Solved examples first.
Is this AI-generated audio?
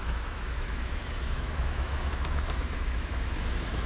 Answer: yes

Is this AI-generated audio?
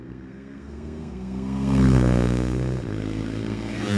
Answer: yes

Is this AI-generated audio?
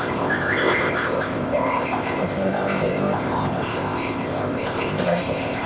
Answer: yes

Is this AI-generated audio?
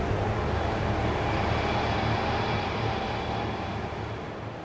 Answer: no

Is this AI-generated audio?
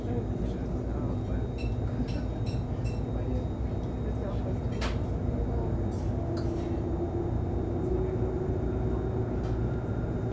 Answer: no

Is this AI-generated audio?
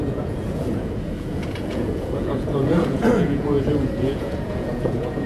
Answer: yes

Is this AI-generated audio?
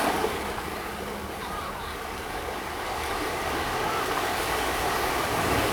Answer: yes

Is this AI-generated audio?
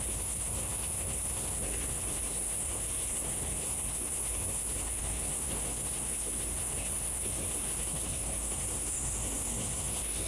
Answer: yes